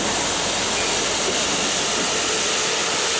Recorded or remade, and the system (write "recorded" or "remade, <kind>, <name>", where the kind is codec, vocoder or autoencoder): recorded